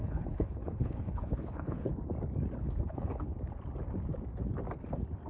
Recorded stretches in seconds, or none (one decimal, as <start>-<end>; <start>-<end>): 1.9-2.6; 3.3-5.3